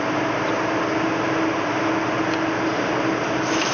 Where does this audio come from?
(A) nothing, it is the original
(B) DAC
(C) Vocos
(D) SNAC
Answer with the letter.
A